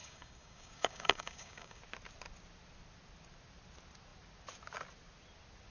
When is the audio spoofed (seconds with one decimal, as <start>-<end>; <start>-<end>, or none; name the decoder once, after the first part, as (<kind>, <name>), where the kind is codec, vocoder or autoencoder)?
0.0-1.8 (codec, DAC)